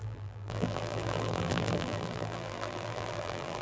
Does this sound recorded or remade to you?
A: remade